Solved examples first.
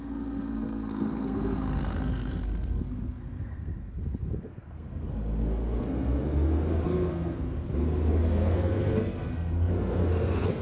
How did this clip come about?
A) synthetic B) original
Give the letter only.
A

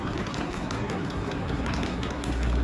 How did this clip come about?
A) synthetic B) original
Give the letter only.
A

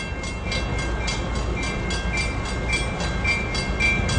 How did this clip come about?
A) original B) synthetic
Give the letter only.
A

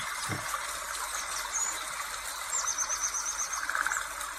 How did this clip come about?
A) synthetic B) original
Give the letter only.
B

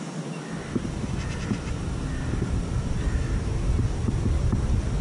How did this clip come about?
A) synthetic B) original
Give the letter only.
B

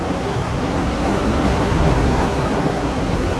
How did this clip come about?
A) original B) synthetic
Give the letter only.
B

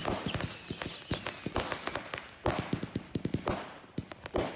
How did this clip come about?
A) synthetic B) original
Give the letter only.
B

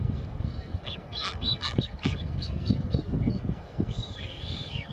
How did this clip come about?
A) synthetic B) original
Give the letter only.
A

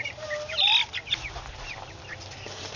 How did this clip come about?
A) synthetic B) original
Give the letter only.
B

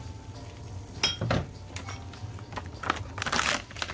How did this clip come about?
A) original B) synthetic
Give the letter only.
A